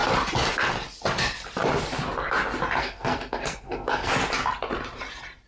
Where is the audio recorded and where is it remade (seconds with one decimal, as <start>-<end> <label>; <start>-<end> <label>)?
0.0-2.8 recorded; 2.8-4.1 remade; 4.1-5.5 recorded